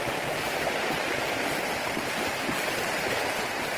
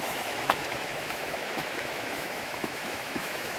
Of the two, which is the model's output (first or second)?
second